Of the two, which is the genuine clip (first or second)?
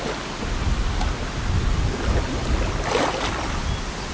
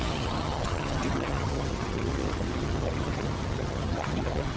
first